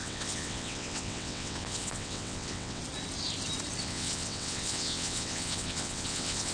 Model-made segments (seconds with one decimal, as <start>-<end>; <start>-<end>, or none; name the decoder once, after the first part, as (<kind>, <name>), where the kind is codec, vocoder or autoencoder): 0.0-2.8 (vocoder, WaveNeXt); 3.8-6.5